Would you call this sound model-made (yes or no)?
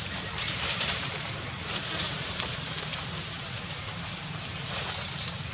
yes